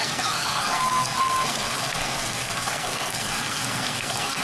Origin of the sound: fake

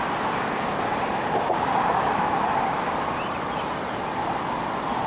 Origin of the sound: real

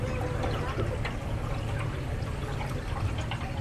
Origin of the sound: real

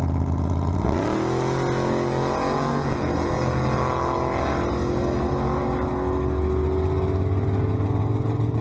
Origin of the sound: real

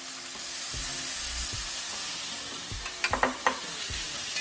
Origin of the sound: real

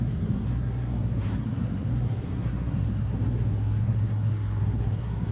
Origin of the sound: fake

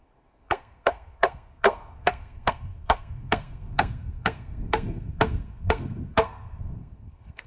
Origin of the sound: fake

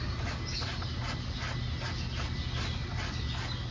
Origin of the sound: real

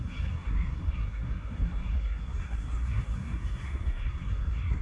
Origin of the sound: fake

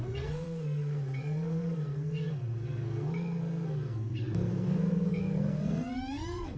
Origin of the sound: fake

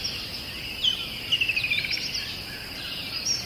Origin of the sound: real